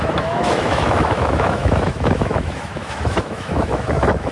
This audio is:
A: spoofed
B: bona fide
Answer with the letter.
A